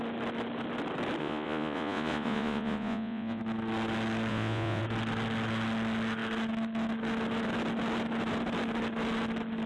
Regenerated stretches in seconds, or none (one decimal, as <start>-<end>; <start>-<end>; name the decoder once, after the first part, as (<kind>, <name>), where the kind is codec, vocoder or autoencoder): 1.2-3.4 (vocoder, Vocos); 4.3-4.8